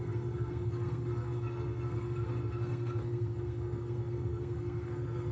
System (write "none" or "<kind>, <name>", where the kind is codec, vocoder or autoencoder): codec, SNAC